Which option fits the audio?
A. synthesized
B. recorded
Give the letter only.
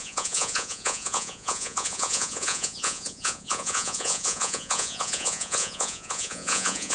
A